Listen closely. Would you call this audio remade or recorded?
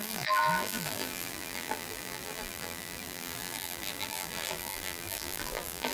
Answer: remade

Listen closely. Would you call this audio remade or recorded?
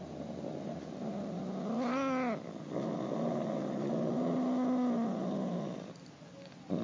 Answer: recorded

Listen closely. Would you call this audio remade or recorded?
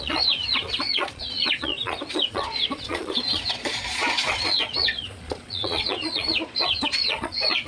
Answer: remade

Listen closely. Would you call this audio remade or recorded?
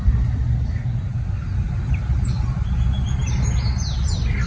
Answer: recorded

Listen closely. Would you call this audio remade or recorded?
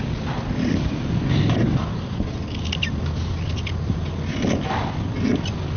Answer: recorded